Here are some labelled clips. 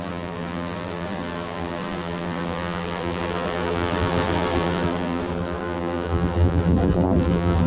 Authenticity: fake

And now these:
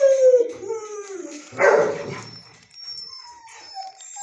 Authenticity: fake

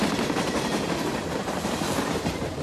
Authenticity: fake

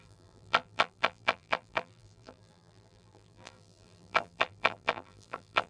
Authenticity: fake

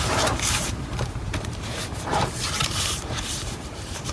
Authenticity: fake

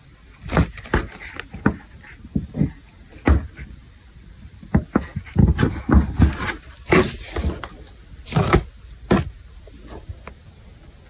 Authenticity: real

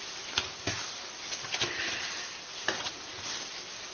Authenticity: fake